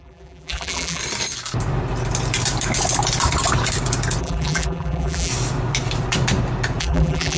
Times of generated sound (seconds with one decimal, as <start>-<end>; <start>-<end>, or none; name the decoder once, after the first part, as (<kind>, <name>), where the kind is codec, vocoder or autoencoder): 0.0-1.0 (vocoder, BigVGAN v2); 4.2-5.3; 6.8-7.4